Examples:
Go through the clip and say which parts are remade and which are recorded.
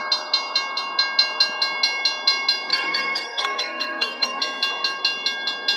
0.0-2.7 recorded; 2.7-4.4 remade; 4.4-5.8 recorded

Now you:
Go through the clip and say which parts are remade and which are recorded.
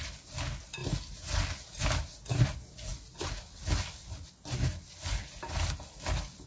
0.0-6.5 recorded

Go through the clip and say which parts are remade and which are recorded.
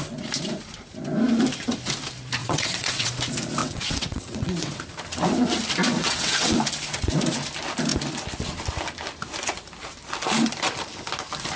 0.0-2.4 recorded; 2.4-3.1 remade; 3.1-3.6 recorded; 3.6-4.8 remade; 4.8-6.0 recorded; 6.0-6.6 remade; 6.6-11.6 recorded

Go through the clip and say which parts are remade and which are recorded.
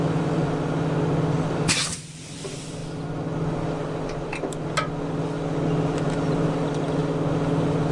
0.0-0.4 remade; 0.4-1.5 recorded; 1.5-2.8 remade; 2.8-5.9 recorded; 5.9-7.0 remade; 7.0-7.9 recorded